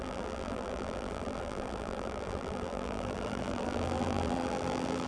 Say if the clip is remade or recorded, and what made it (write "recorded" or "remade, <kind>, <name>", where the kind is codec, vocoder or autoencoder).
remade, vocoder, BigVGAN v2